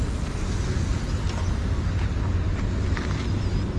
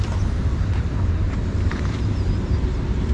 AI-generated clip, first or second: second